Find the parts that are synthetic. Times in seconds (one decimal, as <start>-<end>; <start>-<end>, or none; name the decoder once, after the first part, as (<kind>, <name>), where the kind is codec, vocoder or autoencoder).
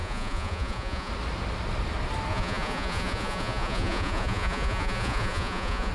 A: 0.0-1.1 (vocoder, Vocos); 2.3-5.9